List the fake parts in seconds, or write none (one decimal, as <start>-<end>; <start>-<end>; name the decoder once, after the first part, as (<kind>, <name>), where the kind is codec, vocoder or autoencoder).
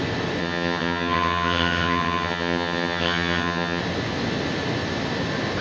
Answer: 0.4-3.8 (vocoder, HiFi-GAN)